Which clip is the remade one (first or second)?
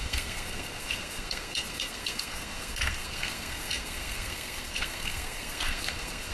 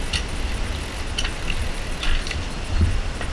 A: first